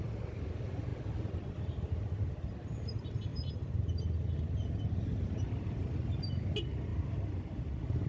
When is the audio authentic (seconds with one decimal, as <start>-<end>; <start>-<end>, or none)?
0.0-3.3; 3.9-6.9

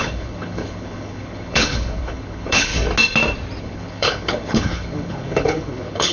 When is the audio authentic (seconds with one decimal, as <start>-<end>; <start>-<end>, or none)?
2.7-3.6

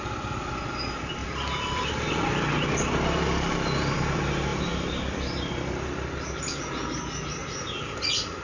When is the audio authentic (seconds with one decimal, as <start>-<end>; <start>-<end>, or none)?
0.0-1.2; 1.8-4.5; 6.4-7.4

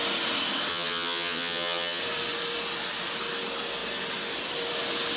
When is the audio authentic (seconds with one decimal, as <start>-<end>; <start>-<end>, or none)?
0.0-0.7; 2.0-5.2